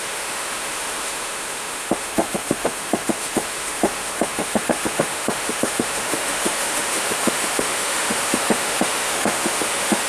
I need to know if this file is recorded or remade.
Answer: remade